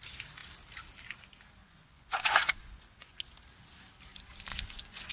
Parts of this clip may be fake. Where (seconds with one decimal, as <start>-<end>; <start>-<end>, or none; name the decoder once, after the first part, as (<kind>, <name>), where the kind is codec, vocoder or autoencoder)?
1.6-3.2 (vocoder, Vocos); 4.5-5.1